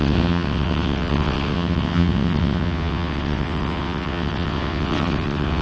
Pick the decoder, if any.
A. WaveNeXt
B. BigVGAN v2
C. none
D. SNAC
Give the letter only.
A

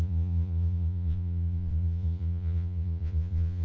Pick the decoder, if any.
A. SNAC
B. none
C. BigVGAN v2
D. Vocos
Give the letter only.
D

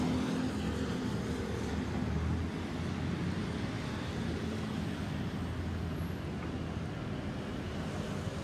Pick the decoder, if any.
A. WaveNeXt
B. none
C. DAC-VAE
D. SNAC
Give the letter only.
B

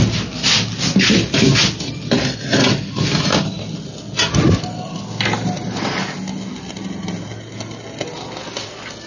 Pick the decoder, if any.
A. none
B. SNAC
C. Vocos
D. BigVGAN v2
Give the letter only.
A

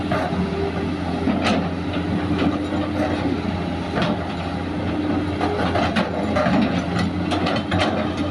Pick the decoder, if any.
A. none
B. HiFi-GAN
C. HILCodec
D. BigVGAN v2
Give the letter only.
A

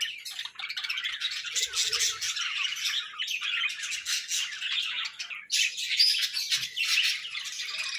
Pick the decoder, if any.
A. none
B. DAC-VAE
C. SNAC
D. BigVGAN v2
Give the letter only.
A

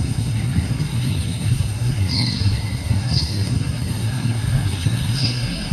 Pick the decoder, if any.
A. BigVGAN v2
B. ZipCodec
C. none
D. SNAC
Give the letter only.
D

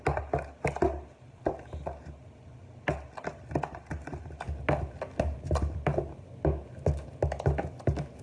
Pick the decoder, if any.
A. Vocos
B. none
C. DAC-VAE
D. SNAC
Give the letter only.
B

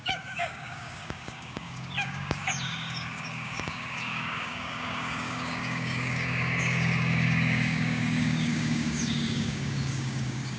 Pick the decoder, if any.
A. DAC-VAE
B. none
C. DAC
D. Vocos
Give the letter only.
C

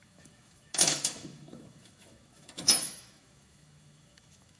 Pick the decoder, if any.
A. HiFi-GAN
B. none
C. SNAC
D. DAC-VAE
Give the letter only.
D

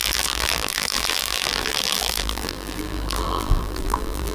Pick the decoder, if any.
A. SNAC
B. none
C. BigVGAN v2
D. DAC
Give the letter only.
C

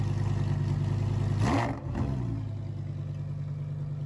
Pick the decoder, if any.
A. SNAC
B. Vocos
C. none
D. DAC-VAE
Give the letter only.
C